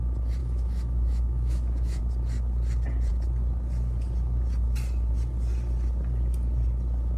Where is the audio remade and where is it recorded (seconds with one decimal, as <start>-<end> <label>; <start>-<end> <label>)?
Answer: 0.0-0.4 recorded; 0.4-2.0 remade; 2.0-7.2 recorded